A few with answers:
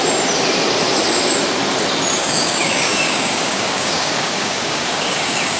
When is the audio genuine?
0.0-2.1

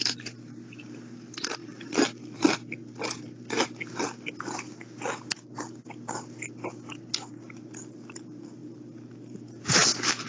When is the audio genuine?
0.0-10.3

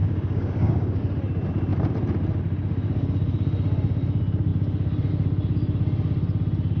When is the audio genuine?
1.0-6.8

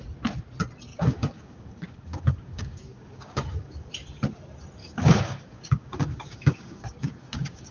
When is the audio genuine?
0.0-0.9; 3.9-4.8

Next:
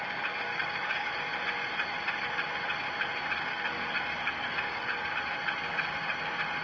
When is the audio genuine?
0.0-0.5; 1.2-3.5; 5.1-6.6

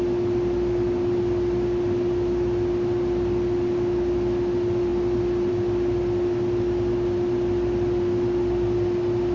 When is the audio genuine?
0.0-9.3